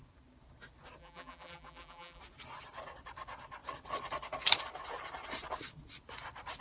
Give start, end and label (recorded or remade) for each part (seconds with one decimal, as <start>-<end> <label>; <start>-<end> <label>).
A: 0.0-1.0 recorded; 1.0-2.2 remade; 2.2-6.6 recorded